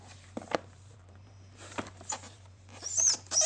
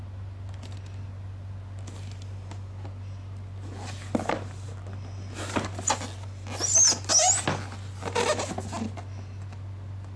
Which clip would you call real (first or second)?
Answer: second